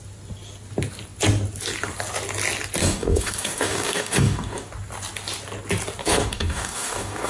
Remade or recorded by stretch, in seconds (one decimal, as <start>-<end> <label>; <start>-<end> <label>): 0.0-2.8 recorded; 2.8-4.7 remade; 4.7-6.0 recorded; 6.0-7.3 remade